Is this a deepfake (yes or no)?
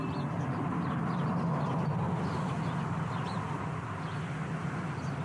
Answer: no